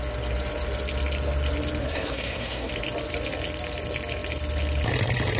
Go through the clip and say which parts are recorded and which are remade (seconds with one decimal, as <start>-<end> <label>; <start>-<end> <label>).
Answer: 0.0-1.8 recorded; 1.8-2.7 remade; 2.7-5.4 recorded